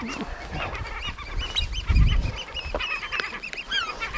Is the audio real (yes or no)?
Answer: yes